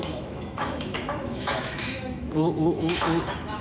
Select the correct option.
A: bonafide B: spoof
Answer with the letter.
B